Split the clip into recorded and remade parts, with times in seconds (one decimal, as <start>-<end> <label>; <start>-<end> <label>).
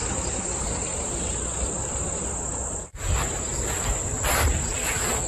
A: 0.0-0.9 remade; 0.9-1.8 recorded; 1.8-5.3 remade